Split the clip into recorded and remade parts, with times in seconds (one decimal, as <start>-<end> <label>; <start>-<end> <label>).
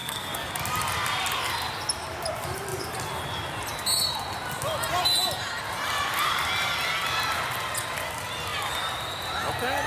0.0-0.5 remade; 0.5-9.9 recorded